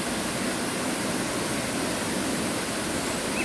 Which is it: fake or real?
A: real